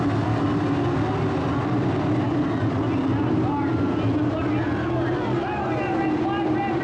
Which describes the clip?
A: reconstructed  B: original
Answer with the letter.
B